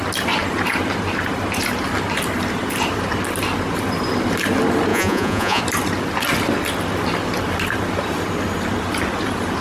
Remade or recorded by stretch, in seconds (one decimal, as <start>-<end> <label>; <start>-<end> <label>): 0.0-4.9 recorded; 4.9-5.6 remade; 5.6-9.6 recorded